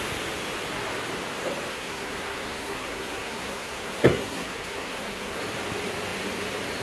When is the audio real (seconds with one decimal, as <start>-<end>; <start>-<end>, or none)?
0.0-1.7; 5.4-6.8